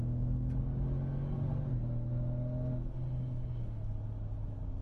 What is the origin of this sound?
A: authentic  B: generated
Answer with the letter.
A